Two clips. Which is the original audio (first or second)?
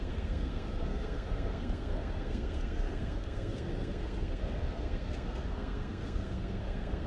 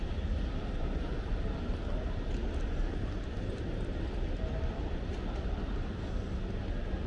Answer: second